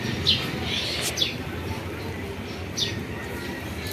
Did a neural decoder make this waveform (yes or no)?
no